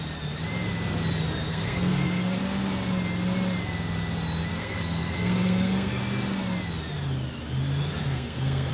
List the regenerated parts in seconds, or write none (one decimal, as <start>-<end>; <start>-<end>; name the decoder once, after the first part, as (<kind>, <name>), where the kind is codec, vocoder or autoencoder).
1.5-2.4 (codec, SNAC); 4.5-6.0; 8.0-8.7